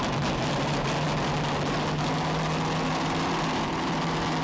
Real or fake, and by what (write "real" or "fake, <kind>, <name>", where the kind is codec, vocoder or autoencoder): real